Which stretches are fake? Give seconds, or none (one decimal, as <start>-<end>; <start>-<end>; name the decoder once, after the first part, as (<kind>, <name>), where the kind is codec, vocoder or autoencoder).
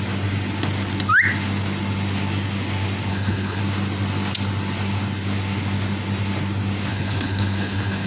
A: 3.1-3.6 (codec, HILCodec); 6.9-8.1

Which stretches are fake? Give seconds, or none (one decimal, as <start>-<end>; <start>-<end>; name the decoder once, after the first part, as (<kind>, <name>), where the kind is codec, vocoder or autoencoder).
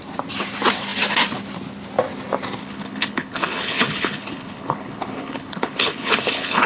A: 2.6-6.7 (codec, HILCodec)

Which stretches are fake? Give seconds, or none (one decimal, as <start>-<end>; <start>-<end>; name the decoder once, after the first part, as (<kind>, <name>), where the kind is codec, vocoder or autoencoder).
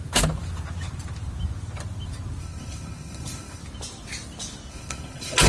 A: 2.4-3.6 (codec, HILCodec); 4.7-5.5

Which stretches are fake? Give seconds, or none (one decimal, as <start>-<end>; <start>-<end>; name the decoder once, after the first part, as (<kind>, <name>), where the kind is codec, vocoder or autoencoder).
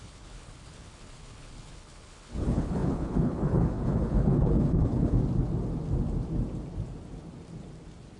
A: 0.0-5.2 (codec, HILCodec)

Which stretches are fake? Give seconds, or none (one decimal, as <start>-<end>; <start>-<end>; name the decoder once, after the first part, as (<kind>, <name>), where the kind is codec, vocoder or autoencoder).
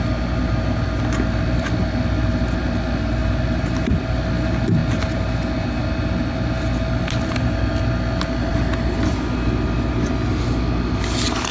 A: none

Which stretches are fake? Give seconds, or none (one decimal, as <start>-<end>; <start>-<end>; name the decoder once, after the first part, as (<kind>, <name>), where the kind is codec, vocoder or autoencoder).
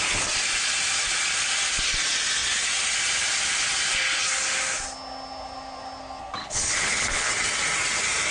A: 6.4-7.3 (codec, HILCodec)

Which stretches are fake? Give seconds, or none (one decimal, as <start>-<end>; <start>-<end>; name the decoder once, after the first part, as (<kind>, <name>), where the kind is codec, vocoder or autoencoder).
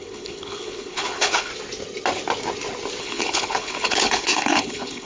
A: 0.0-1.5 (codec, HILCodec); 3.0-5.1